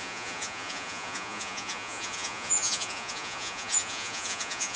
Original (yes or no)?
no